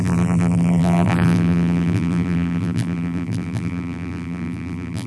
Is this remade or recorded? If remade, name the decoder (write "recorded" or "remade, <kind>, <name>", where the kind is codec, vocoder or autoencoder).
remade, vocoder, BigVGAN v2